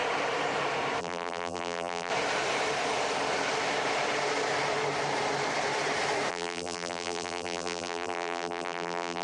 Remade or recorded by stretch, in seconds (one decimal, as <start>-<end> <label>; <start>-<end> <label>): 0.0-1.0 recorded; 1.0-2.1 remade; 2.1-6.3 recorded; 6.3-9.2 remade